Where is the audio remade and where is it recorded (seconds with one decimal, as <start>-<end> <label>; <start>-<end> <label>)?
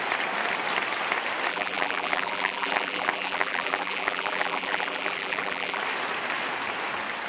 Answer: 0.0-1.5 recorded; 1.5-5.8 remade; 5.8-7.3 recorded